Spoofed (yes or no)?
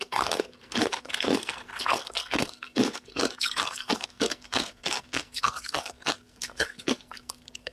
yes